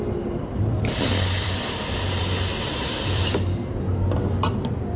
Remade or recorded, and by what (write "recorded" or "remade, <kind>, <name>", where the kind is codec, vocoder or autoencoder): remade, vocoder, BigVGAN v2